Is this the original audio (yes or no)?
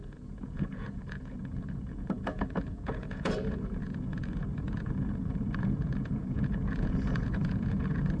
no